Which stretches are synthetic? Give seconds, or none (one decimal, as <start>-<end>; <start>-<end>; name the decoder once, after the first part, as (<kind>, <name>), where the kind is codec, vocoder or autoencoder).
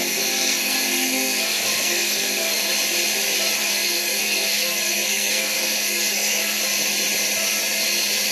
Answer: 0.0-2.7 (codec, SNAC); 3.6-6.6